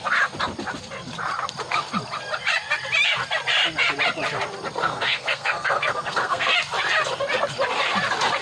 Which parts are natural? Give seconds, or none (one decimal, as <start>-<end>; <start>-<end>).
0.0-4.9; 6.5-8.4